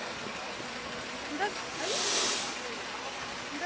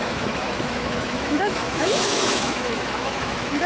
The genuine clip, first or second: first